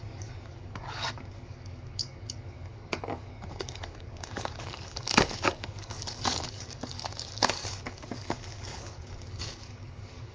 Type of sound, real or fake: fake